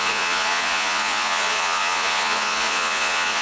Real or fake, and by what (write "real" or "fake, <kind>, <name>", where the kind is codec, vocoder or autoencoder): fake, vocoder, Vocos